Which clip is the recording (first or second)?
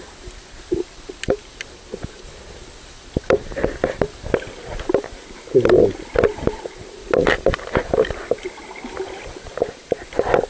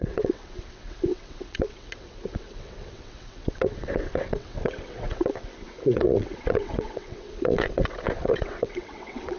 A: first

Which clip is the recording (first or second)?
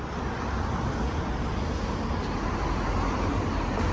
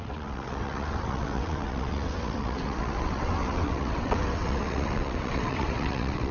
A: first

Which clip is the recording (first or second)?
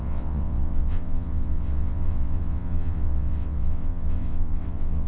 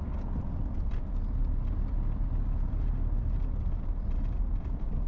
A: second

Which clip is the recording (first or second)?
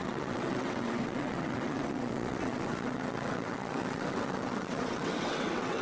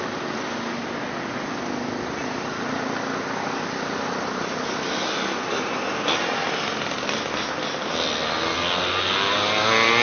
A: second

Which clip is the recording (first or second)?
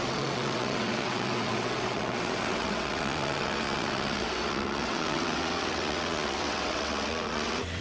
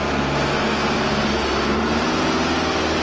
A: second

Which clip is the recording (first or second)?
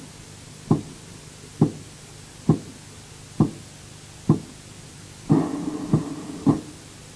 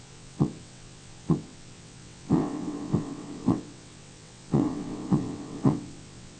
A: first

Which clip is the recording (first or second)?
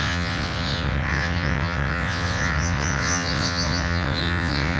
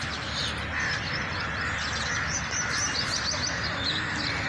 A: second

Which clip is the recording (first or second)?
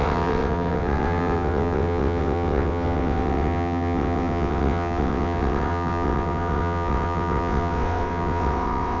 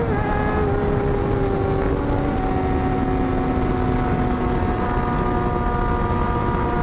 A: second